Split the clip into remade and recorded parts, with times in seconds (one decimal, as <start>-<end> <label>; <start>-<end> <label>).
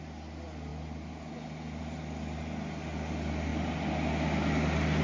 0.0-5.0 recorded